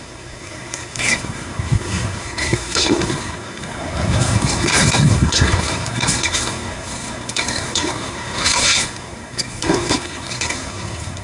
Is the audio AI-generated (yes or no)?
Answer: yes